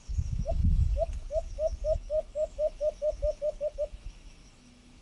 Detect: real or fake fake